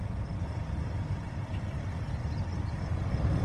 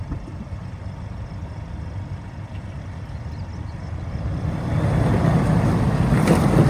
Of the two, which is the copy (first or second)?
first